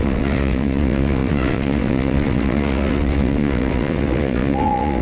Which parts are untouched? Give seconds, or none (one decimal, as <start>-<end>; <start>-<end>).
none